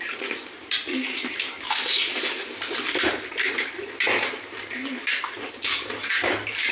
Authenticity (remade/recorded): remade